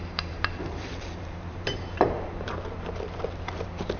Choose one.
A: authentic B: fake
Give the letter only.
B